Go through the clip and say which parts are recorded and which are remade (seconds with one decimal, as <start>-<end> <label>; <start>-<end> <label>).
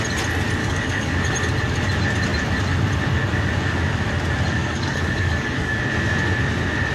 0.0-0.6 recorded; 0.6-1.2 remade; 1.2-4.6 recorded; 4.6-5.8 remade; 5.8-6.9 recorded